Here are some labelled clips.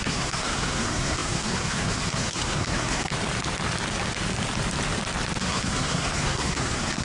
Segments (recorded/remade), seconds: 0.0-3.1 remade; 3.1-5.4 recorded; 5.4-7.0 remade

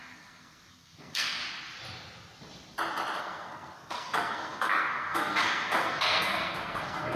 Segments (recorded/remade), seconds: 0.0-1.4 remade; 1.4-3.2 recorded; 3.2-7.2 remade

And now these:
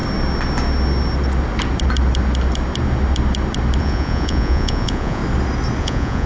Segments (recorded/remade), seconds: 0.0-3.8 recorded; 3.8-5.2 remade; 5.2-5.8 recorded; 5.8-6.3 remade

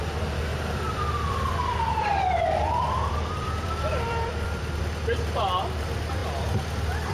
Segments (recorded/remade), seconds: 0.0-0.5 recorded; 0.5-4.8 remade; 4.8-7.1 recorded

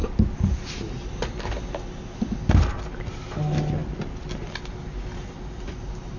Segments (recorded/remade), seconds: 0.0-6.2 recorded

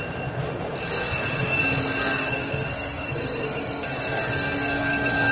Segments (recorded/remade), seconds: 0.0-0.9 recorded; 0.9-1.6 remade; 1.6-2.0 recorded; 2.0-5.3 remade